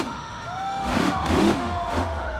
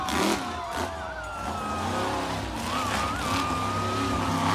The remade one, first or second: first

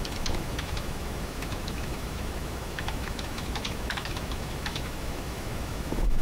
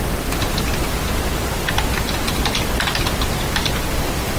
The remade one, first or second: first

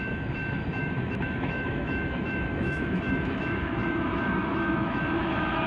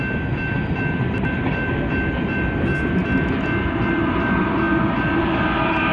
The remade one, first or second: first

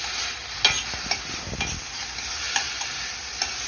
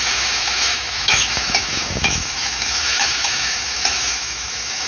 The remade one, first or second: second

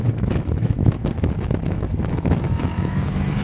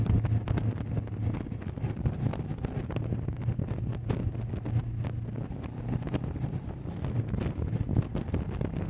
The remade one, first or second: first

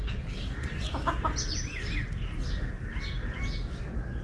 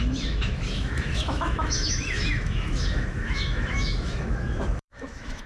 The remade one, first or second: second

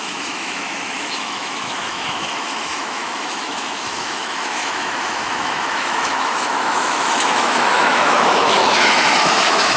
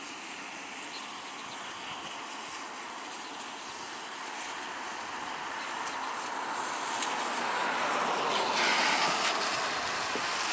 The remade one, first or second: first